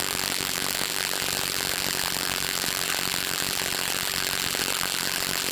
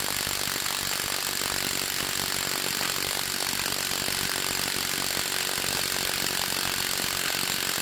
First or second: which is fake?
first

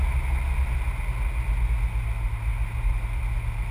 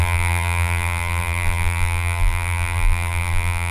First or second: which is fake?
second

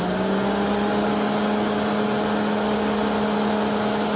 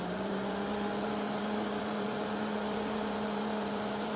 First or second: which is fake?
second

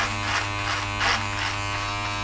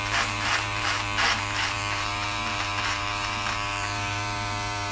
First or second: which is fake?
second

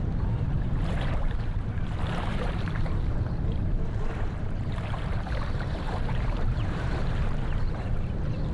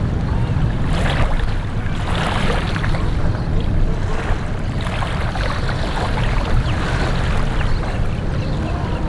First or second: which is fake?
first